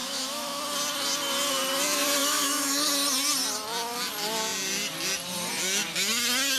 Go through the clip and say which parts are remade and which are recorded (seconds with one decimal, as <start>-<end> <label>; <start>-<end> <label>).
0.0-0.6 remade; 0.6-2.2 recorded; 2.2-2.9 remade; 2.9-6.6 recorded